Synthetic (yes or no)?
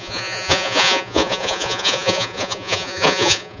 yes